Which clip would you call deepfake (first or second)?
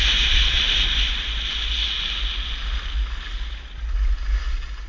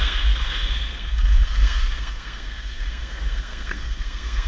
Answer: second